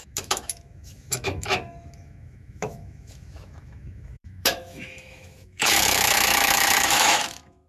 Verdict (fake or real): fake